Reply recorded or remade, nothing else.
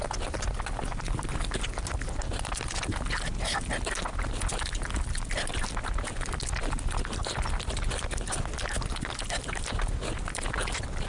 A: recorded